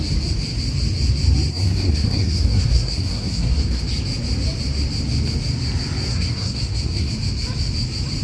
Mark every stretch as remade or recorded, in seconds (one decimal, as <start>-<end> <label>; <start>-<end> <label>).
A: 0.0-1.5 recorded; 1.5-3.8 remade; 3.8-6.1 recorded; 6.1-7.1 remade; 7.1-8.2 recorded